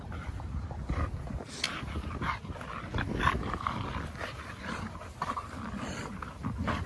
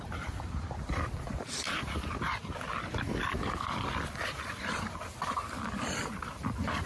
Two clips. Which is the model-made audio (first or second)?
second